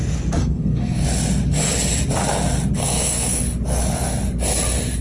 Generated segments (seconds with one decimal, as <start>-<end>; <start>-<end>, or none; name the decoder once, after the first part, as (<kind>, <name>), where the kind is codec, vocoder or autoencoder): 0.4-1.0 (codec, SNAC); 2.8-3.4